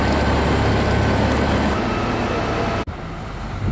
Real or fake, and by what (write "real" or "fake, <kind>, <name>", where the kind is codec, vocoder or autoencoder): real